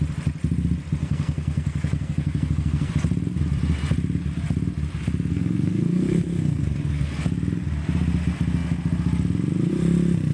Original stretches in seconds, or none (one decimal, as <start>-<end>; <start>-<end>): 0.0-1.0; 2.9-5.3; 7.1-10.3